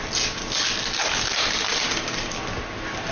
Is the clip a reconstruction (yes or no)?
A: no